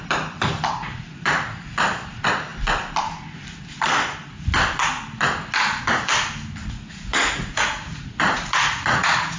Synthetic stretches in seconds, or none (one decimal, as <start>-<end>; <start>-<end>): 0.8-1.3; 6.6-9.4